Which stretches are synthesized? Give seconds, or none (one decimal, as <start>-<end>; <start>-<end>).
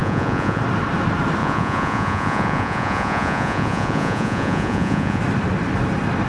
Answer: 0.0-0.6; 1.4-5.2